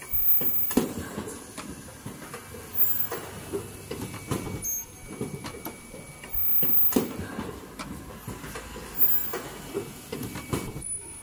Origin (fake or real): real